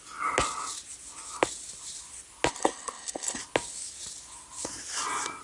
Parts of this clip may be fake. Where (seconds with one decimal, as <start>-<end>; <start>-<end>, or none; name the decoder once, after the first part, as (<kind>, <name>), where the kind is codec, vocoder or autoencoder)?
2.5-3.4 (codec, HILCodec)